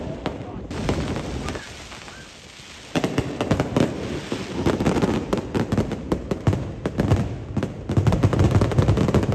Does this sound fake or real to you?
real